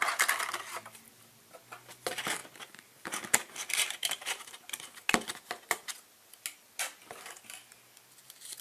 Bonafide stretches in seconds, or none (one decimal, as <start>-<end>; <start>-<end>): 0.0-2.4; 5.0-8.6